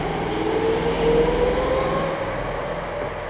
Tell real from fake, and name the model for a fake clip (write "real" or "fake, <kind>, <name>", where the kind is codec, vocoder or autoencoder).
real